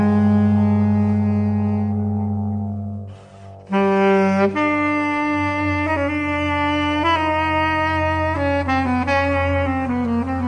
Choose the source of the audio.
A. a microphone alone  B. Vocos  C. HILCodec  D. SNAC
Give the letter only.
A